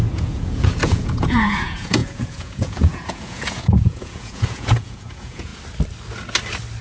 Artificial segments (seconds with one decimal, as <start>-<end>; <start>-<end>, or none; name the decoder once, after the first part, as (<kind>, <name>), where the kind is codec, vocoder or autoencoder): 0.0-5.5 (vocoder, Vocos)